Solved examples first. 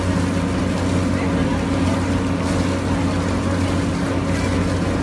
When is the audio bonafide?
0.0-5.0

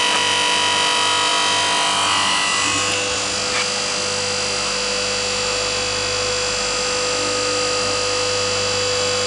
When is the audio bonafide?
0.0-9.3

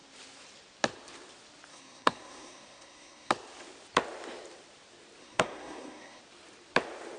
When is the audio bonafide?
0.0-1.7; 3.3-5.2; 6.2-7.2

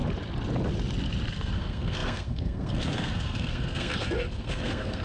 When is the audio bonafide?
0.0-1.3

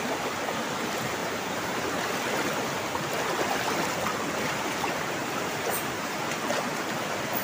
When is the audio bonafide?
0.0-1.2; 1.8-5.2; 6.2-7.4

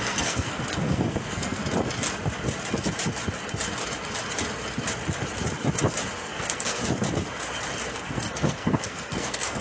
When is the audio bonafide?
1.6-6.2; 6.8-7.9

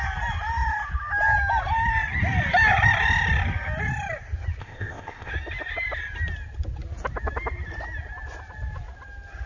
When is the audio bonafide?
0.0-4.6; 5.3-9.5